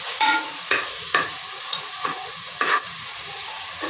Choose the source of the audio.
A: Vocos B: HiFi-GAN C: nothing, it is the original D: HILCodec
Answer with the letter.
A